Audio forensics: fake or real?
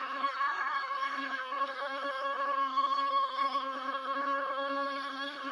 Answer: fake